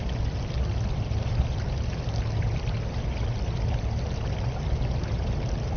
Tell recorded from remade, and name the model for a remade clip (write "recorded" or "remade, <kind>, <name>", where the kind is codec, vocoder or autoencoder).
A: recorded